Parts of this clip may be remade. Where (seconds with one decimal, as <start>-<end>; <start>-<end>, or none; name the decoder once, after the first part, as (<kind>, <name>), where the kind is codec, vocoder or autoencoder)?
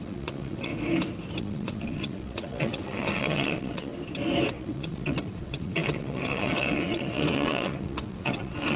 0.0-0.7 (vocoder, WaveNeXt); 1.4-3.9; 4.5-8.8